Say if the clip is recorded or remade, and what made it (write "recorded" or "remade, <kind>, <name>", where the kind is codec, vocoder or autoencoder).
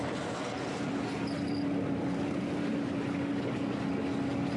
recorded